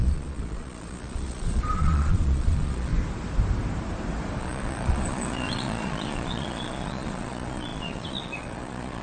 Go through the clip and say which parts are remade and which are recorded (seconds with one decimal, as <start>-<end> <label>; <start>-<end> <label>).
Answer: 0.0-2.9 remade; 2.9-4.4 recorded; 4.4-9.0 remade